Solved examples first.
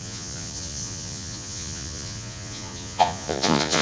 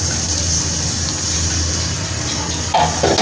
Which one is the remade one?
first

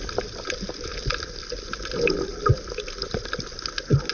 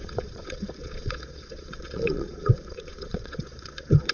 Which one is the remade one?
second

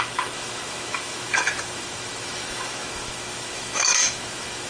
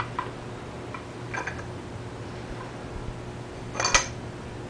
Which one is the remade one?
first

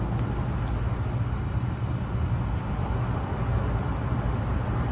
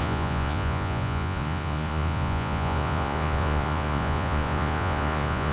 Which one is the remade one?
second